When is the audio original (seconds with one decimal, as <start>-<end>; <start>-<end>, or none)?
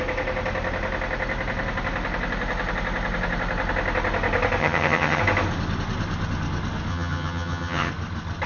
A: 0.0-4.6; 5.2-6.9; 7.9-8.5